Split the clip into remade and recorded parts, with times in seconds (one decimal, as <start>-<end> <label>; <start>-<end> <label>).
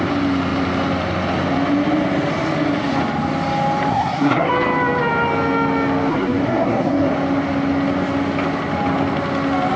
0.0-3.9 recorded; 3.9-4.5 remade; 4.5-6.1 recorded; 6.1-7.1 remade; 7.1-9.8 recorded